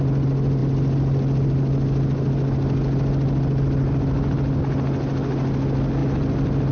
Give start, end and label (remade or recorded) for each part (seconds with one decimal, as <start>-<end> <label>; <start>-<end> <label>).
0.0-6.7 recorded